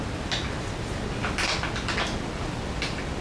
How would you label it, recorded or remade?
recorded